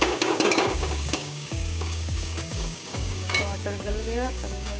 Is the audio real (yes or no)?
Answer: no